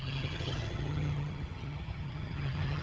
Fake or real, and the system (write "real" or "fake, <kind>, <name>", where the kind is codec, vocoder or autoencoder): fake, vocoder, HiFi-GAN